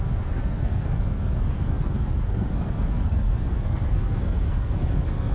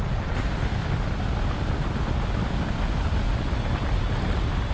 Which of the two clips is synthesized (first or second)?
first